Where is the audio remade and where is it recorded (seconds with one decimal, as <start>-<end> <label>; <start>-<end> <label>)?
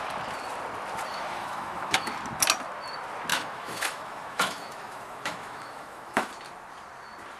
0.0-1.1 recorded; 1.1-2.1 remade; 2.1-3.3 recorded; 3.3-6.3 remade; 6.3-7.4 recorded